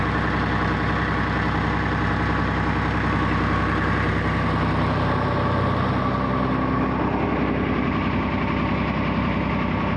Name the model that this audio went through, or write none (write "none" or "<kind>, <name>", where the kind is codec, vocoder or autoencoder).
none